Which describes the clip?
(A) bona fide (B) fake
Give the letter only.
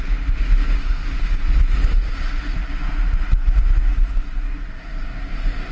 A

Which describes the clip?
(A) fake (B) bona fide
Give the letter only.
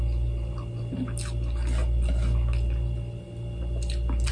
B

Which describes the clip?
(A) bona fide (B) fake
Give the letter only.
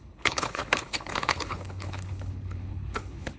B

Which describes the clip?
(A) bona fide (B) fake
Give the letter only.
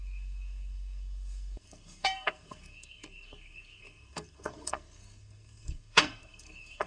B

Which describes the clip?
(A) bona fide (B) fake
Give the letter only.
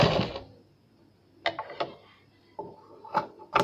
A